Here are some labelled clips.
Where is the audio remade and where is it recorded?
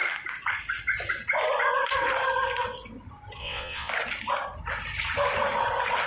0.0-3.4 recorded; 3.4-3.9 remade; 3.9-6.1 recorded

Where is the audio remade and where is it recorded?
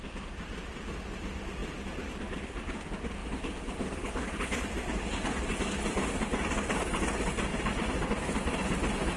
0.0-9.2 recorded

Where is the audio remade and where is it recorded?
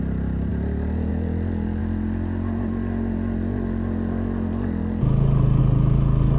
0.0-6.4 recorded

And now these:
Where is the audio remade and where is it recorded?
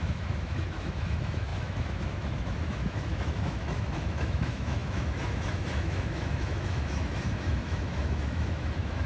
0.0-9.1 remade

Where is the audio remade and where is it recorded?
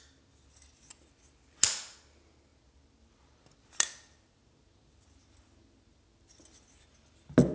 0.0-7.5 recorded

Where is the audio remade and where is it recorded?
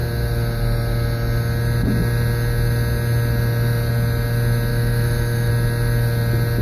0.0-4.7 recorded; 4.7-5.5 remade; 5.5-6.6 recorded